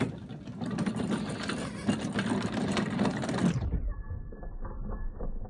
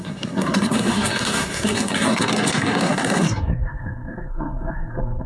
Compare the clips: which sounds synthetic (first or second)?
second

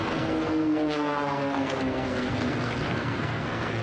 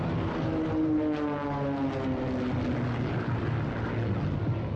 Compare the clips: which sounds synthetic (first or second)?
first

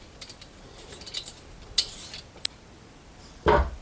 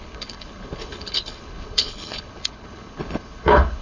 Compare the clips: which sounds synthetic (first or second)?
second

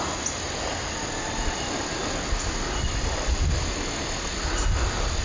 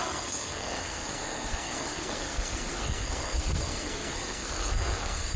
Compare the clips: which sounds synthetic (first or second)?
second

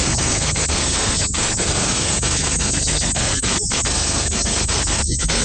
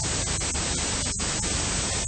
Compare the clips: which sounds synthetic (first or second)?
first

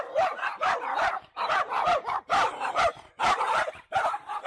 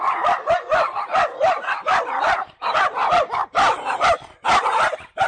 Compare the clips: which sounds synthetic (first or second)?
first